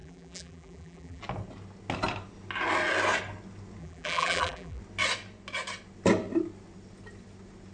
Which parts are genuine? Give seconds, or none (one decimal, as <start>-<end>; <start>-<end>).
1.2-3.8; 4.8-7.7